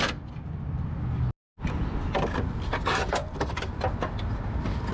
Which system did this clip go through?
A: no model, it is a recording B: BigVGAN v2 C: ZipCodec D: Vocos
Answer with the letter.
A